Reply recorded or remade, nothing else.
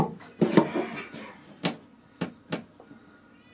recorded